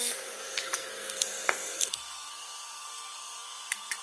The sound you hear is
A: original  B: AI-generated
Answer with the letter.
B